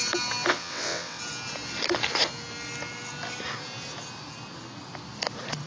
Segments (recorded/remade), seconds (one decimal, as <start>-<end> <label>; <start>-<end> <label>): 0.0-0.5 recorded; 0.5-1.2 remade; 1.2-5.7 recorded